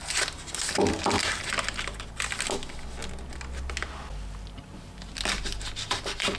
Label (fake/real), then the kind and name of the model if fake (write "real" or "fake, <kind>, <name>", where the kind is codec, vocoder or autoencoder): real